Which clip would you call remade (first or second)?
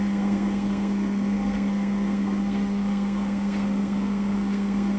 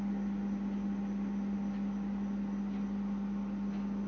first